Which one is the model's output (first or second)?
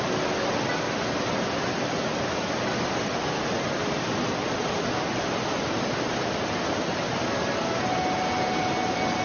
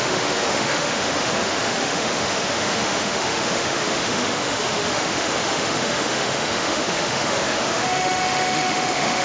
second